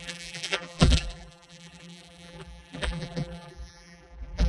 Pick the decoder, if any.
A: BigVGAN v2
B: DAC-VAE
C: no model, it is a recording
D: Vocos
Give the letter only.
A